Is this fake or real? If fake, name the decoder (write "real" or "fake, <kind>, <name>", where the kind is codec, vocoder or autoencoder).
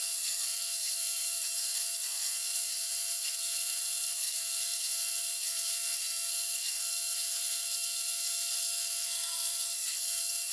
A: fake, codec, SNAC